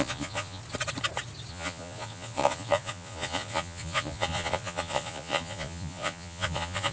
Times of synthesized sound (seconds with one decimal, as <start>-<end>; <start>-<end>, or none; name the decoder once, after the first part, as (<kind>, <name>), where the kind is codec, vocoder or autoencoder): 0.0-0.6 (vocoder, Vocos); 1.5-6.9